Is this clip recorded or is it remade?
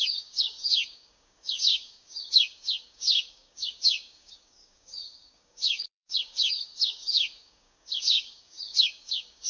remade